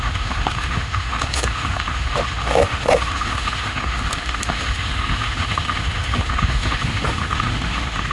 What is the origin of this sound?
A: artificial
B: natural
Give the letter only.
A